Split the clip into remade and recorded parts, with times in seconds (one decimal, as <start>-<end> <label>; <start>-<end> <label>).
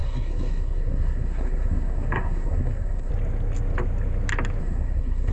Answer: 0.0-3.1 remade; 3.1-4.6 recorded; 4.6-5.3 remade